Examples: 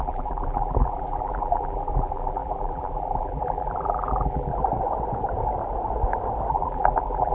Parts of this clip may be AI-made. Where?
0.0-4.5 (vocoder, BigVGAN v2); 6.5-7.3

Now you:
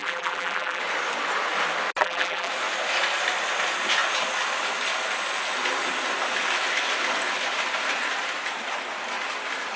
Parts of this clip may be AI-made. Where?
0.0-0.8 (vocoder, BigVGAN v2); 2.0-2.5

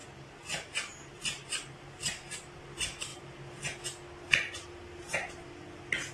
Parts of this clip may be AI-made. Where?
none

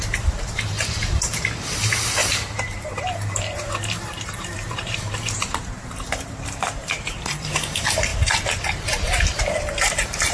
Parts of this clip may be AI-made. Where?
0.0-10.3 (vocoder, BigVGAN v2)

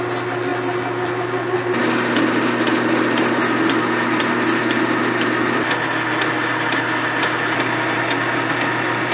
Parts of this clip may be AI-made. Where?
none

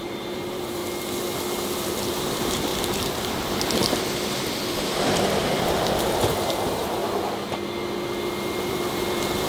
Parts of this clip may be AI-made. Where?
0.0-0.8 (vocoder, BigVGAN v2); 2.1-7.0; 8.5-9.5

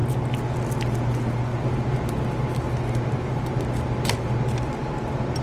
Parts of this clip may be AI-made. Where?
1.5-4.4 (vocoder, BigVGAN v2)

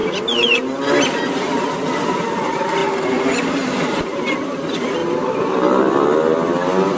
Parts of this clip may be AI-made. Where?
2.8-4.3 (vocoder, BigVGAN v2)